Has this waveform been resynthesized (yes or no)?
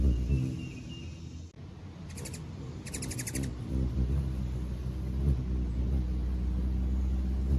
no